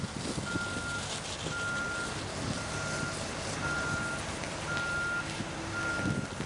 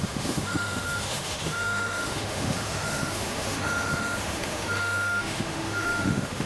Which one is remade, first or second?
second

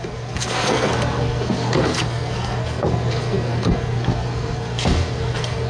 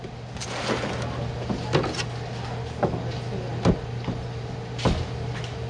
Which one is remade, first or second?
first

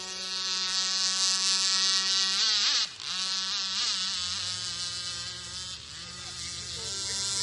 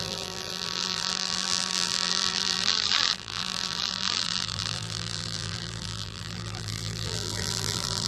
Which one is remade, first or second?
second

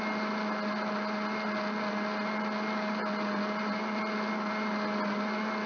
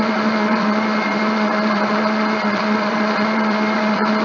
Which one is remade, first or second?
second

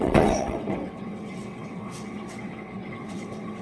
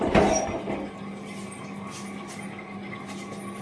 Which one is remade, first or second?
first